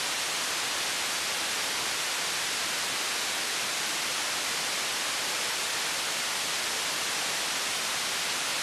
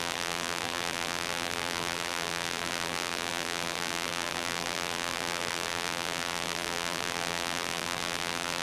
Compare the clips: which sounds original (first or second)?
first